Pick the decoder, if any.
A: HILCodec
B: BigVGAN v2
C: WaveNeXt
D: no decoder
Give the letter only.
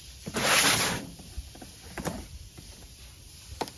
B